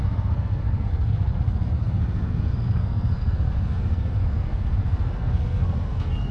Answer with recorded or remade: remade